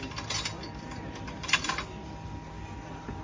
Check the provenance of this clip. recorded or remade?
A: recorded